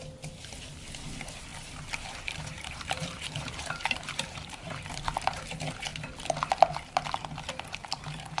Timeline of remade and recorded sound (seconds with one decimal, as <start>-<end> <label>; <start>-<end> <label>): 0.0-1.5 recorded; 1.5-5.4 remade; 5.4-7.8 recorded; 7.8-8.4 remade